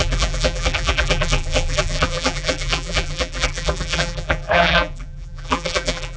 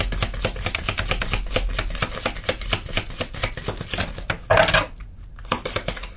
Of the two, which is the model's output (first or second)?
first